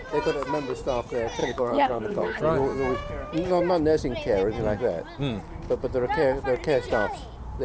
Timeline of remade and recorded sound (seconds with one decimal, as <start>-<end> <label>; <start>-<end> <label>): 0.0-1.4 recorded; 1.4-2.4 remade; 2.4-7.6 recorded